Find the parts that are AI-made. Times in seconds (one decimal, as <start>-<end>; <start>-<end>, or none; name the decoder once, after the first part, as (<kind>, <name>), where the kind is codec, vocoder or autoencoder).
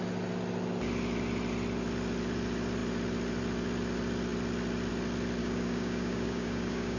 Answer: 5.4-7.0 (codec, DAC)